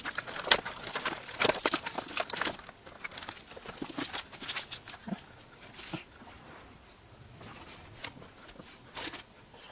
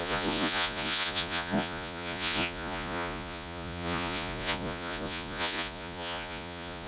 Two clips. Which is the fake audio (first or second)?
second